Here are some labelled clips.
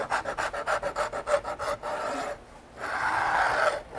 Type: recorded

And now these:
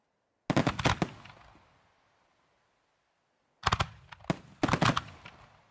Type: recorded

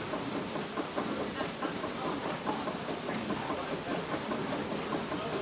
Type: remade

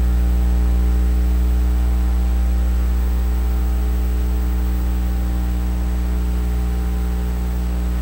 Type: recorded